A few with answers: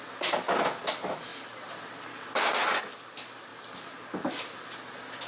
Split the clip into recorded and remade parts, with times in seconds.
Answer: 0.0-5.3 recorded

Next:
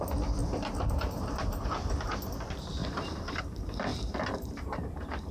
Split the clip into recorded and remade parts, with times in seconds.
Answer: 0.0-0.4 recorded; 0.4-1.9 remade; 1.9-2.8 recorded; 2.8-3.4 remade; 3.4-3.9 recorded; 3.9-5.3 remade

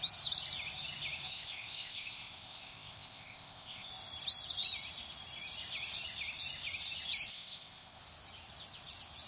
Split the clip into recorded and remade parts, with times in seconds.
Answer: 0.0-1.3 recorded; 1.3-3.9 remade; 3.9-7.3 recorded; 7.3-8.0 remade; 8.0-9.3 recorded

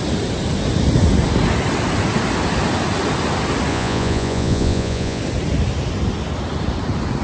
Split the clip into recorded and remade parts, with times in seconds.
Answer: 0.0-3.7 recorded; 3.7-5.2 remade; 5.2-7.2 recorded